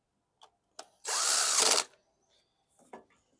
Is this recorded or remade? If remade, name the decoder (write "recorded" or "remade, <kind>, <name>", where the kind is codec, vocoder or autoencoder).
recorded